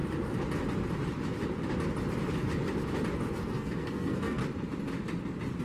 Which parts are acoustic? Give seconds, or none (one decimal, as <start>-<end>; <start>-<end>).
0.0-3.4; 4.4-5.6